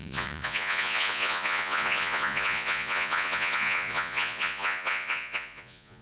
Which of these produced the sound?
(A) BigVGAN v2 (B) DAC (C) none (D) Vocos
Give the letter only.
D